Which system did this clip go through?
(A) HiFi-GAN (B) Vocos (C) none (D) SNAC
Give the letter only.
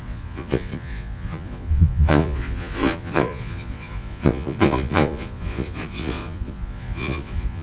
B